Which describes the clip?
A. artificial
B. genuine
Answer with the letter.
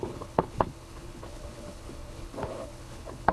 A